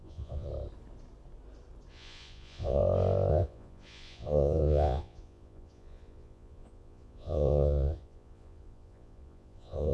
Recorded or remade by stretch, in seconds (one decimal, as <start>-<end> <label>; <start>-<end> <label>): 0.0-0.5 remade; 0.5-1.9 recorded; 1.9-2.8 remade; 2.8-3.3 recorded; 3.3-9.9 remade